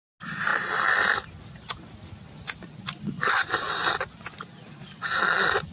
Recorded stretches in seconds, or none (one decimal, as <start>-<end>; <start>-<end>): 0.0-5.7